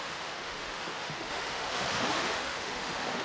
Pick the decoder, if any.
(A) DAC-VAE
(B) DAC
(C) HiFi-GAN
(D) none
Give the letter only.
A